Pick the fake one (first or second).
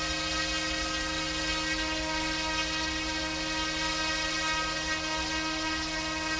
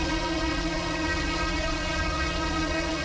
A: second